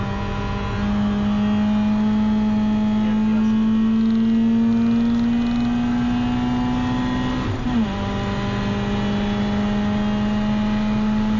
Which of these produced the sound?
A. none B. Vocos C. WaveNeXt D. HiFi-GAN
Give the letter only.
A